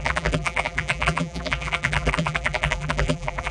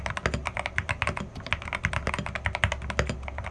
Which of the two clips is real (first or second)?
second